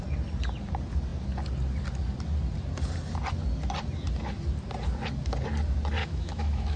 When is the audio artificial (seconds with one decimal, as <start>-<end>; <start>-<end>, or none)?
6.0-6.8